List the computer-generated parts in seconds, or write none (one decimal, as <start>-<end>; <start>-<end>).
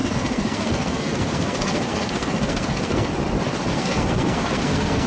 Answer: 0.0-3.1; 3.7-5.1